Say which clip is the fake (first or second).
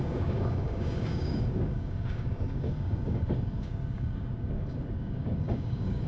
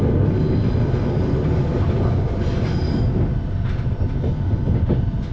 first